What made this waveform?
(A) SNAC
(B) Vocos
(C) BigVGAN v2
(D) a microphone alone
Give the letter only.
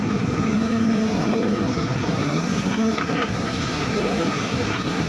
A